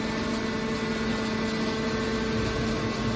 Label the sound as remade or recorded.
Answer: recorded